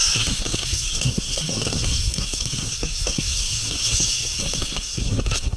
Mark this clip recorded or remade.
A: remade